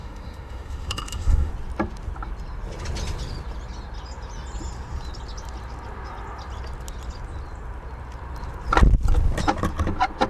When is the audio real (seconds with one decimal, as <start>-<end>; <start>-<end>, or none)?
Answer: 1.5-10.3